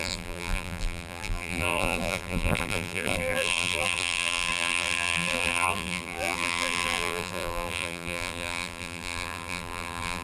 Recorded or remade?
remade